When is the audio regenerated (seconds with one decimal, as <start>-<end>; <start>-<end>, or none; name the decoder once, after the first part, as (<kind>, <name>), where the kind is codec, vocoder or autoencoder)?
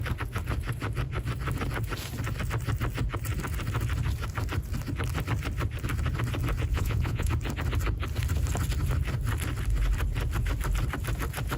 6.7-7.3 (vocoder, Vocos)